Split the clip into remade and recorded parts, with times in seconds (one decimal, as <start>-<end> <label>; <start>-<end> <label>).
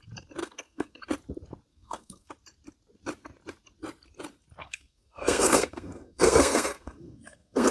0.0-0.4 recorded; 0.4-1.0 remade; 1.0-1.7 recorded; 1.7-2.3 remade; 2.3-4.6 recorded; 4.6-7.7 remade